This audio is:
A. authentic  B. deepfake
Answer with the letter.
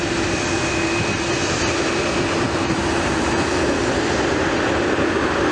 A